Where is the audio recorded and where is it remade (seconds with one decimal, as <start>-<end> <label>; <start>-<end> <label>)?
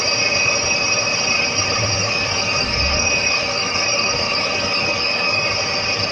0.0-2.0 recorded; 2.0-5.5 remade; 5.5-6.1 recorded